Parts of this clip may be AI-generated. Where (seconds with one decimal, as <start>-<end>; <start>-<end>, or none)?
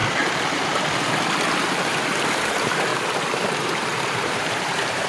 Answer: 2.4-2.9; 3.6-5.1